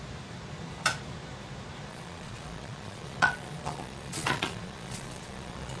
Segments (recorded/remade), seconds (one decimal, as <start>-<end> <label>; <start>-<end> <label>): 0.0-1.9 recorded; 1.9-5.8 remade